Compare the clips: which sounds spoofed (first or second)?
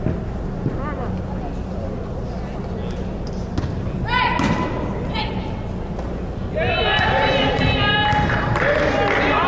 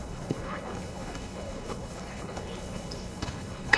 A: second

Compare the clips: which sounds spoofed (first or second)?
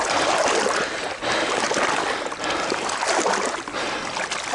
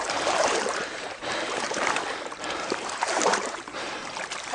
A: second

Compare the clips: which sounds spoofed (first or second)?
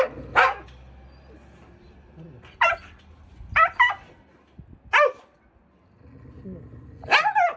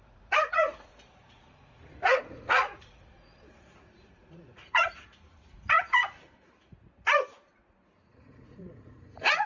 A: second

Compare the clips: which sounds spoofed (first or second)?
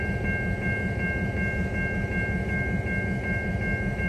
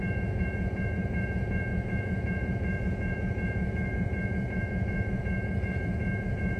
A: second